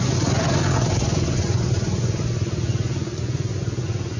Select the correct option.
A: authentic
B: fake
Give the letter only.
B